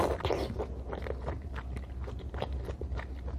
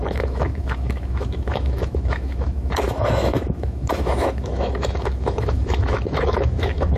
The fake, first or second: second